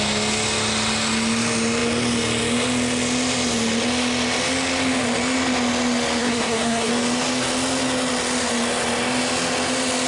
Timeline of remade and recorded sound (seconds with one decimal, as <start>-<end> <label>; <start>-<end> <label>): 0.0-6.2 recorded; 6.2-6.9 remade; 6.9-10.1 recorded